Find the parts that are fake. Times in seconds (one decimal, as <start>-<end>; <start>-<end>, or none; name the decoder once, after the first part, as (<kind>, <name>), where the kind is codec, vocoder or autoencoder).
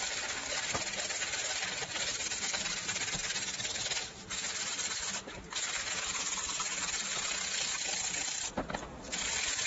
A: 0.0-9.7 (vocoder, BigVGAN v2)